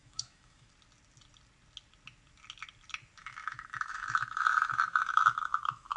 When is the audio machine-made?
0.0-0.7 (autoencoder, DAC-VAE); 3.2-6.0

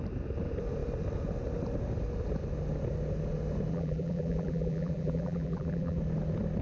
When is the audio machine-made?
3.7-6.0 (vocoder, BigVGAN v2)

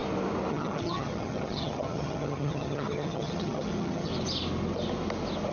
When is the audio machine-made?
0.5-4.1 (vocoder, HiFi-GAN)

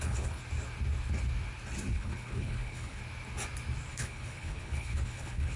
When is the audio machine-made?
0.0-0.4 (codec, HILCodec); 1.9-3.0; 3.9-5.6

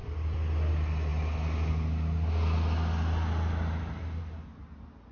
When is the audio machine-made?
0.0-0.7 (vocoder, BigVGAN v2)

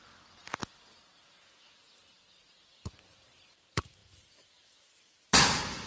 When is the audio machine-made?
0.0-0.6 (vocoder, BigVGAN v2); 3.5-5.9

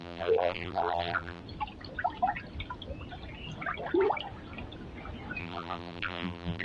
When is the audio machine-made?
0.0-1.4 (vocoder, BigVGAN v2); 5.4-6.6

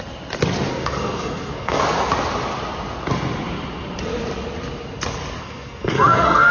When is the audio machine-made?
0.7-1.8 (codec, SNAC); 5.4-6.5